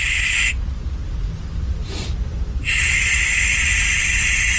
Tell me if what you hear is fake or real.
real